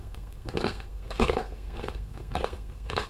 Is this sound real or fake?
fake